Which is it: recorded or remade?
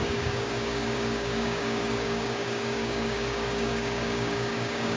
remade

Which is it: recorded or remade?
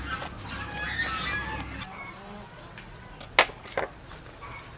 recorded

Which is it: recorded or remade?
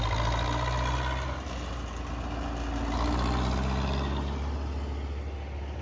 recorded